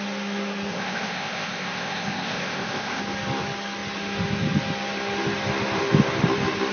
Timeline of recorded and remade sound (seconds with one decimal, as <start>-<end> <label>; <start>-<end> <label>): 0.0-0.7 recorded; 0.7-3.0 remade; 3.0-6.7 recorded